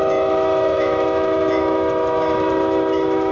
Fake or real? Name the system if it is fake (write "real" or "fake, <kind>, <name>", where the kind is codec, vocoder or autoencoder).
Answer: fake, autoencoder, DAC-VAE